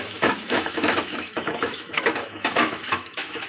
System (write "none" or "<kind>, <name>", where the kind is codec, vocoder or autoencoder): autoencoder, DAC-VAE